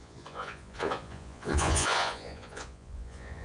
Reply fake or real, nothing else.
fake